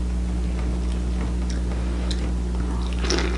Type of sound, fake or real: real